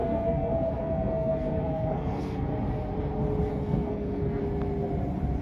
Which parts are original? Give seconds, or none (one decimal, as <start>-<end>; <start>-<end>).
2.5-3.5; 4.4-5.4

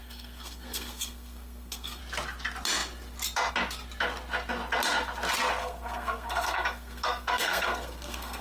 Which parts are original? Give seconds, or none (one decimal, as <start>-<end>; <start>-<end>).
2.0-5.6

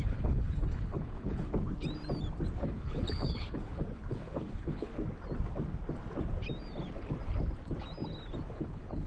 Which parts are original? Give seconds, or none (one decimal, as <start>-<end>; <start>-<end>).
1.5-2.6; 4.9-8.5

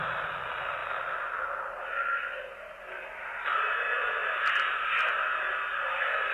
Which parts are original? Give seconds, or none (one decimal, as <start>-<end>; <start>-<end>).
0.0-6.3